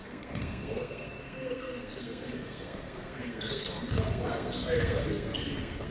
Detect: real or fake fake